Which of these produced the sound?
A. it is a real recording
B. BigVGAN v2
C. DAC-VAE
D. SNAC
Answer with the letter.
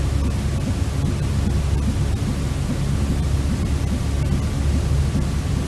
A